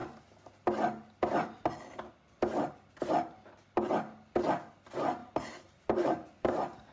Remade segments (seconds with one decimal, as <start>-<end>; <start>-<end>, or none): 5.2-6.9